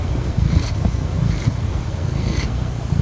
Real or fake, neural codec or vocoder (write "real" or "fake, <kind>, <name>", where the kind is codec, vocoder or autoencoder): fake, codec, SNAC